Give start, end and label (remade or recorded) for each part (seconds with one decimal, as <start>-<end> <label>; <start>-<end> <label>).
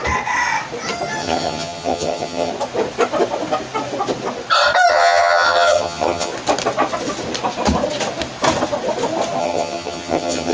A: 0.0-1.2 recorded; 1.2-2.5 remade; 2.5-4.9 recorded; 4.9-6.3 remade; 6.3-9.4 recorded; 9.4-10.5 remade